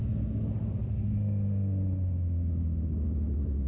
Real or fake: real